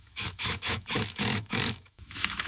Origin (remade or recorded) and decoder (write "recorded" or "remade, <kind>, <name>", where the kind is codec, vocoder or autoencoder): remade, autoencoder, DAC-VAE